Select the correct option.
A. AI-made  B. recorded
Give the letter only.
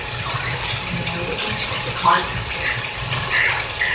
B